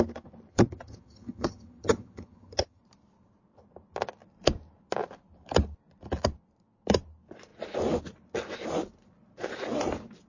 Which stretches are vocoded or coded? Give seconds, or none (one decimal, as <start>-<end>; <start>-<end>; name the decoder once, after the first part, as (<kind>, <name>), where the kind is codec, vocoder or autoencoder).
0.5-2.8 (vocoder, HiFi-GAN)